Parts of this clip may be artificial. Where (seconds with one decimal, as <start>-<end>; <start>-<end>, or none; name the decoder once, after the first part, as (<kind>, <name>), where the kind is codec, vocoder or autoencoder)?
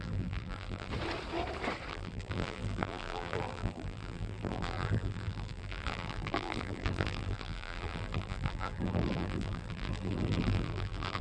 0.0-0.9 (vocoder, BigVGAN v2); 1.9-11.2